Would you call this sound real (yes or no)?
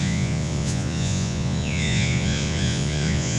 no